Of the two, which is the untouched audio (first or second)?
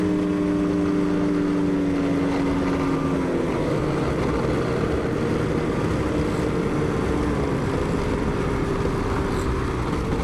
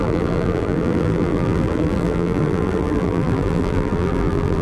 first